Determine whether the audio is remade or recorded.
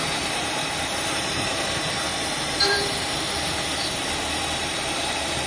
remade